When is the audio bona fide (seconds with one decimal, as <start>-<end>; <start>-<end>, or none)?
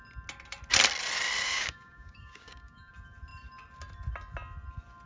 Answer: 0.0-1.4; 2.9-5.1